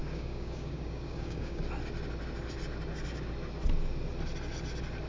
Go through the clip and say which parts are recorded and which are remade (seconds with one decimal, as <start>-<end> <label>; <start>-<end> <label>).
0.0-1.6 remade; 1.6-5.1 recorded